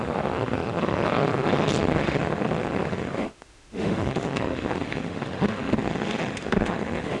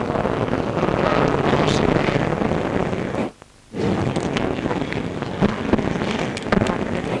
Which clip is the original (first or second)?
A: second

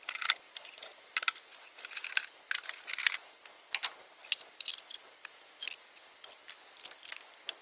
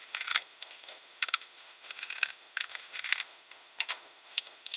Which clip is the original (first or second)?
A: first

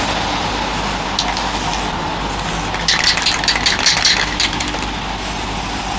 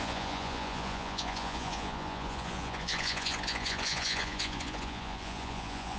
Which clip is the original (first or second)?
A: first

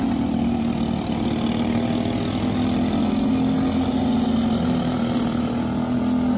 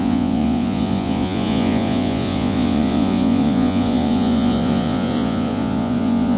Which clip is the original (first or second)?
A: first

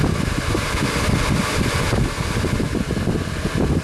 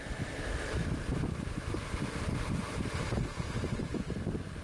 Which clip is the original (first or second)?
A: first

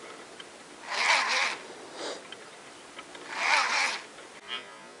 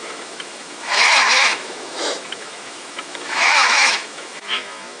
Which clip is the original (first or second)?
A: first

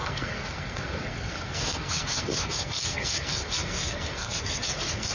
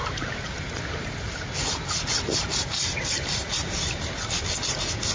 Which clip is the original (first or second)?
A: second